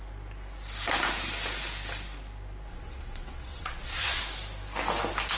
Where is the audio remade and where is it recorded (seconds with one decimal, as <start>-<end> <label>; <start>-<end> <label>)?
0.0-2.7 recorded; 2.7-4.2 remade; 4.2-5.4 recorded